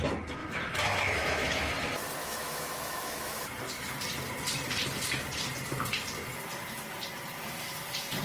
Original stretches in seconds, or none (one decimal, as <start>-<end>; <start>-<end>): 0.0-0.4; 1.7-2.2; 3.5-8.2

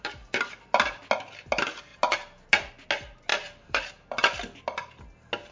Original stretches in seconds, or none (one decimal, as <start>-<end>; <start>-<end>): 0.0-3.3; 3.9-5.5

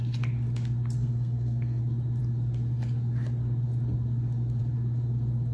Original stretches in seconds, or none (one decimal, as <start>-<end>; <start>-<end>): 0.0-1.0; 1.8-5.5